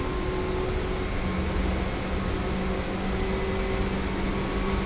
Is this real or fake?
real